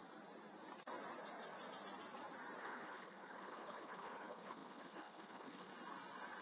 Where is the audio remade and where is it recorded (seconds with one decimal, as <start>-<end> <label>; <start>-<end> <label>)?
0.0-2.6 recorded; 2.6-5.7 remade; 5.7-6.4 recorded